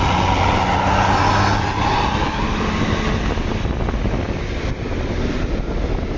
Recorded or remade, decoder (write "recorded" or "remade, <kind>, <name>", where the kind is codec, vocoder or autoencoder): recorded